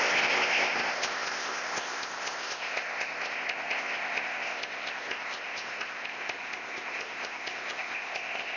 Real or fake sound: fake